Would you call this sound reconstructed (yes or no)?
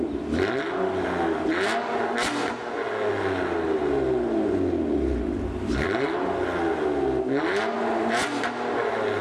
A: no